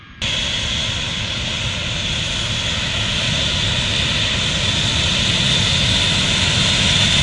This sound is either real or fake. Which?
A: real